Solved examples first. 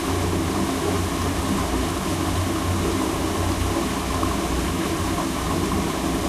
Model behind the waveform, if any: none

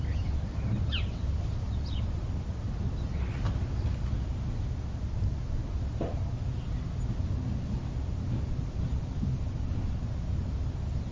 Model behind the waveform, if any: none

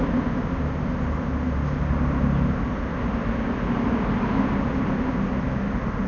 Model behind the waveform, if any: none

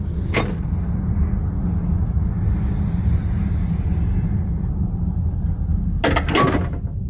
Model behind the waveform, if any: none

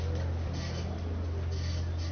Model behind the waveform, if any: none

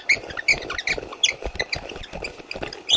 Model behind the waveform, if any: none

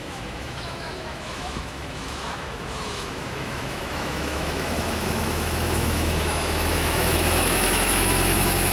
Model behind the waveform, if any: autoencoder, DAC-VAE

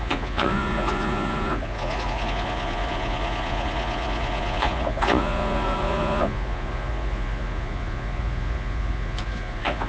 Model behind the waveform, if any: vocoder, Vocos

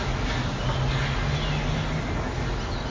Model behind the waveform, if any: none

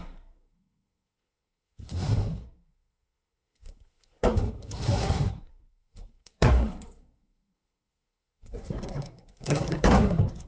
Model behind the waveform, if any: codec, SNAC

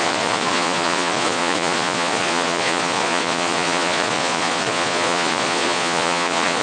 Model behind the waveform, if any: vocoder, Vocos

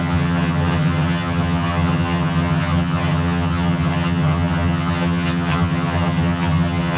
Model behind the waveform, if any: vocoder, HiFi-GAN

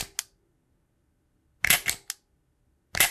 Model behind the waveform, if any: none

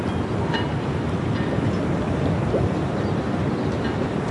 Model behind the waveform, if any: none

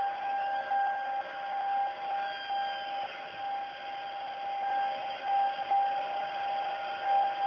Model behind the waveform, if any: none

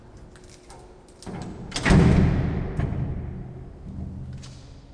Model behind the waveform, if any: none